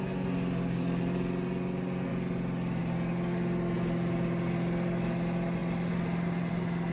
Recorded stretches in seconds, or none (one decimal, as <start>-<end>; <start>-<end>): 0.0-6.9